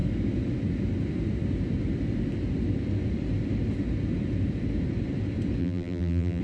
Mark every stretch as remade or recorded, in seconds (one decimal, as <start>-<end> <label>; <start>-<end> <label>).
0.0-5.6 recorded; 5.6-6.4 remade